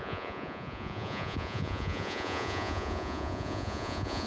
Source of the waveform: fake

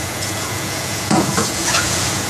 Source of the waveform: fake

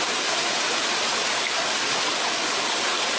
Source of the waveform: real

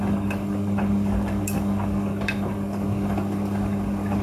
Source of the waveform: fake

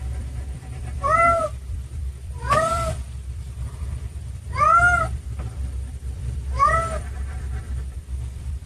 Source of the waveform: fake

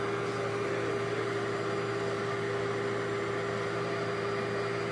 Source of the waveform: real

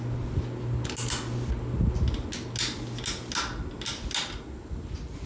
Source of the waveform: real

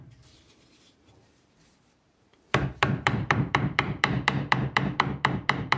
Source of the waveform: fake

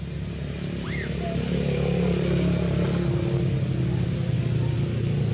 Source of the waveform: real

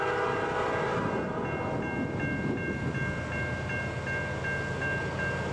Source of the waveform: real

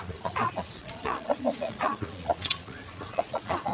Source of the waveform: fake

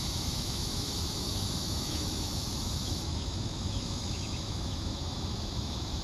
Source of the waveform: fake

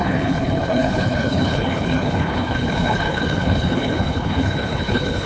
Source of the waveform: fake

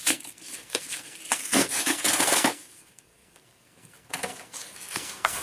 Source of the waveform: fake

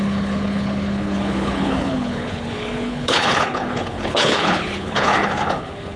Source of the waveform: fake